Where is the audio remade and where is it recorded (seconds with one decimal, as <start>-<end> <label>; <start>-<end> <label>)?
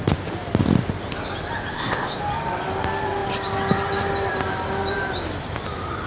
0.0-1.7 recorded; 1.7-2.2 remade; 2.2-6.1 recorded